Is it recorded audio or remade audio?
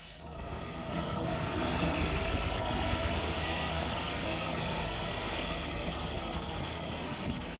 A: remade